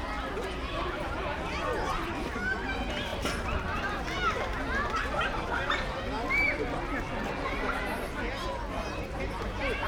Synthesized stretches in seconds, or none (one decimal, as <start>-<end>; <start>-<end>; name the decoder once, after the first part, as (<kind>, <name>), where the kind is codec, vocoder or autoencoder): none